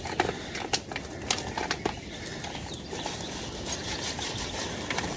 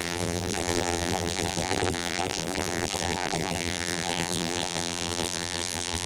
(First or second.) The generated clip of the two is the second